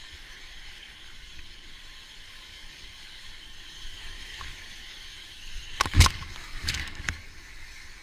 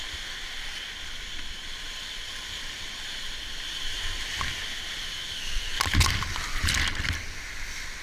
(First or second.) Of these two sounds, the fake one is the first